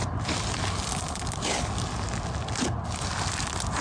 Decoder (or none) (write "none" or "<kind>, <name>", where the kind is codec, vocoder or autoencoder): none